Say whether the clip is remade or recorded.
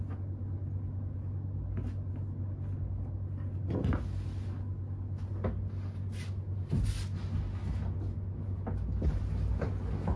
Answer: recorded